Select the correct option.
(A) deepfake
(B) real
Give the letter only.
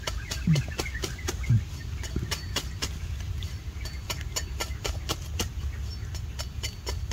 B